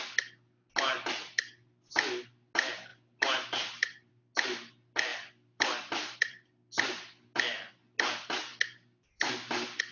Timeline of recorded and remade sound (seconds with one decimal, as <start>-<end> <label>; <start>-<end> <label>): 0.0-2.9 recorded; 2.9-4.1 remade; 4.1-5.1 recorded; 5.1-6.5 remade; 6.5-9.9 recorded